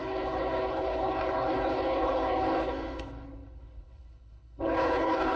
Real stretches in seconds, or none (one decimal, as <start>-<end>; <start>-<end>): none